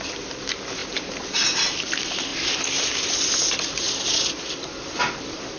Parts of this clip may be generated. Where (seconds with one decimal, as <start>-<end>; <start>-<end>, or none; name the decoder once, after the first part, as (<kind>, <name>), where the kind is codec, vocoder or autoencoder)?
2.3-3.6 (vocoder, BigVGAN v2)